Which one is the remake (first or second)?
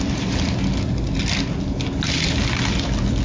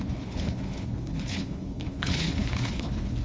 second